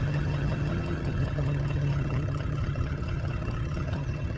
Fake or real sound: fake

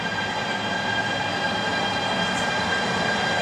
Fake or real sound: real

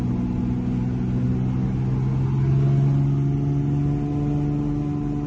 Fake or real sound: real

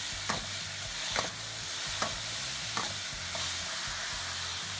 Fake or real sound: real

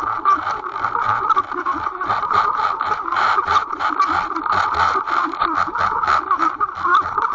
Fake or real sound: real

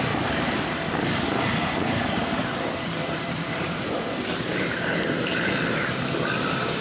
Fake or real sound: fake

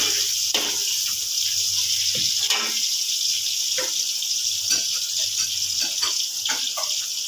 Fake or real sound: real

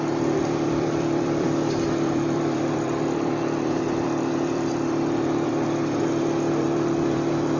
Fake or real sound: fake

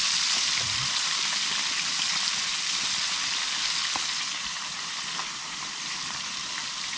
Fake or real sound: fake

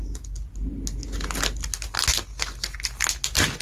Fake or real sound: real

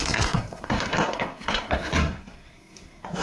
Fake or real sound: fake